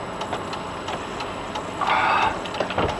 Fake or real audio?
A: real